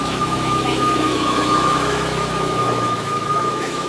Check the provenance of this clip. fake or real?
fake